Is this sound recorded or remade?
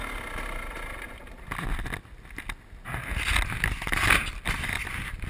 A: recorded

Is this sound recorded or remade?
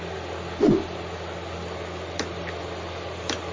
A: recorded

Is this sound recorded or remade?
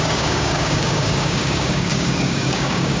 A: remade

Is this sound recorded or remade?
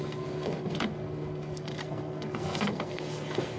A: remade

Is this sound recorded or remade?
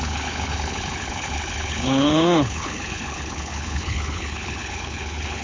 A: remade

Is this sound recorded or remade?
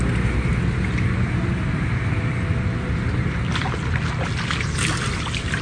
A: recorded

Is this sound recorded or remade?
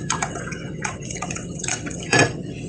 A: remade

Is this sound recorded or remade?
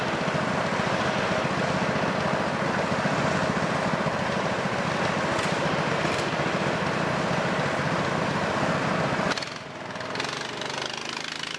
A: recorded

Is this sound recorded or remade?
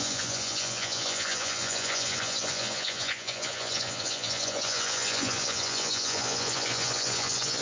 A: remade